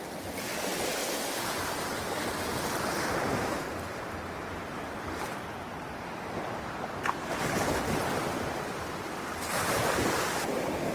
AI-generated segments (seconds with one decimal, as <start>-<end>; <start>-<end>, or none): none